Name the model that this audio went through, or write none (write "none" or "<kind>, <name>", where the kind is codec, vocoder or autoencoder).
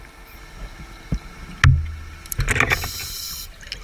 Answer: none